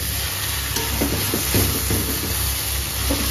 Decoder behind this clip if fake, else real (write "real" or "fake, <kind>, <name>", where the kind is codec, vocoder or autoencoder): real